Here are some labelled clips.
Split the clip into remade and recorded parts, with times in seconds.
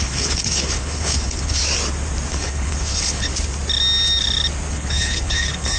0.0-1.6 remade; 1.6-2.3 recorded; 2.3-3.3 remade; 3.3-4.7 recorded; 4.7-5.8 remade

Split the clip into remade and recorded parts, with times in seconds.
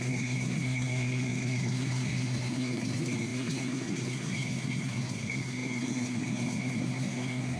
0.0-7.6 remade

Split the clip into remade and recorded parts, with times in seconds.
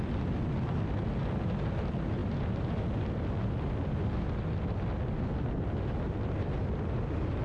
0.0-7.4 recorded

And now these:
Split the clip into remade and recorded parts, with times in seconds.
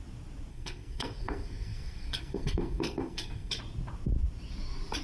0.0-0.5 recorded; 0.5-3.5 remade; 3.5-5.0 recorded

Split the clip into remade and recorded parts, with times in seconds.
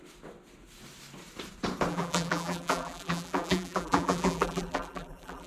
0.0-1.9 recorded; 1.9-5.5 remade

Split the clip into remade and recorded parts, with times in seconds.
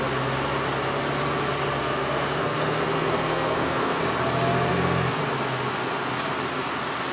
0.0-1.8 recorded; 1.8-4.0 remade; 4.0-4.7 recorded; 4.7-5.2 remade; 5.2-7.1 recorded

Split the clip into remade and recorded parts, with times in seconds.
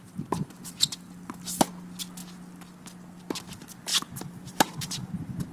0.0-3.9 recorded; 3.9-5.5 remade